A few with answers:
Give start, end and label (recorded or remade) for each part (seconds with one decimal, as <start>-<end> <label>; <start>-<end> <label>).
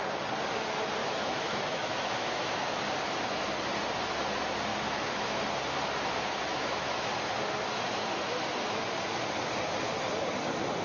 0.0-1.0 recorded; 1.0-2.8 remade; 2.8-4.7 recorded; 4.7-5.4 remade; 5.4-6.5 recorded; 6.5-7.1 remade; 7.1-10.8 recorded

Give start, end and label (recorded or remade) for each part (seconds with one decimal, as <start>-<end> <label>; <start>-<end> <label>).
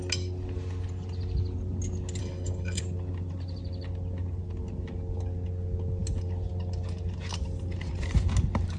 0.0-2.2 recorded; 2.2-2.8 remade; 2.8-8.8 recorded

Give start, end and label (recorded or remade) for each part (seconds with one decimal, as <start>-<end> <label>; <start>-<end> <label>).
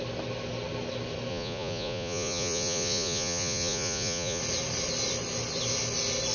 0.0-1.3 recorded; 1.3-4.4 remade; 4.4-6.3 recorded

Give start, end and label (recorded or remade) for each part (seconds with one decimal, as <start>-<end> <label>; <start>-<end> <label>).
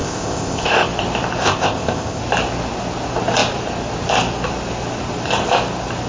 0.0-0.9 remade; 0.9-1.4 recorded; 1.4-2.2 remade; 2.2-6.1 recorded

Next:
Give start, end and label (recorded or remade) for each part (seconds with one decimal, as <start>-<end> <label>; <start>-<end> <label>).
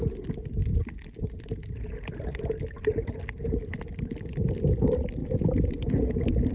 0.0-6.5 recorded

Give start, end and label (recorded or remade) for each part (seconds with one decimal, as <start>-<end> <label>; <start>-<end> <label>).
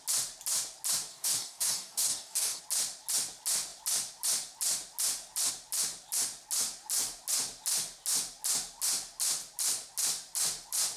0.0-1.1 recorded; 1.1-2.6 remade; 2.6-11.0 recorded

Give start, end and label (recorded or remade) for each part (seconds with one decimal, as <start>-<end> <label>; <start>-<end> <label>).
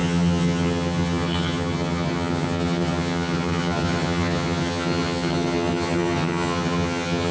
0.0-7.3 remade